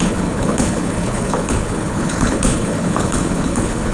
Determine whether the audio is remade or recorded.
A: remade